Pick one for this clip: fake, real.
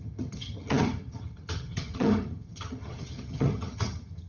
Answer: fake